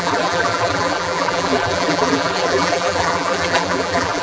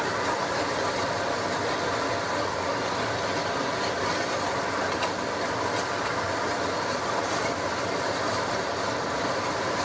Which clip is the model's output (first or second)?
first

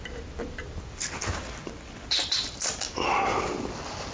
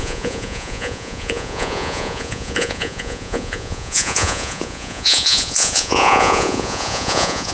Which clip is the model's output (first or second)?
second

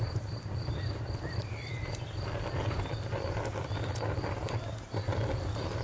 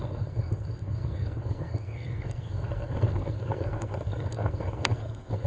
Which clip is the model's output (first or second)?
second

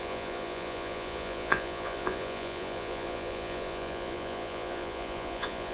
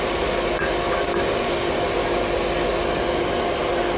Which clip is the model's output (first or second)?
first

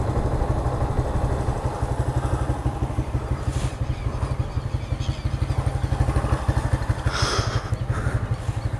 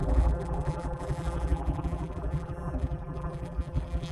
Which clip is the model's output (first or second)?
second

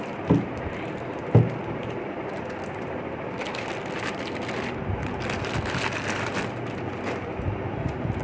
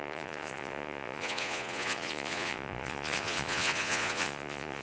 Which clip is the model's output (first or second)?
second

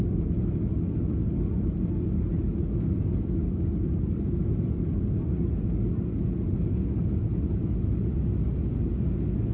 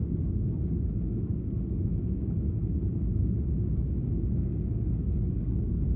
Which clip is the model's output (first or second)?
second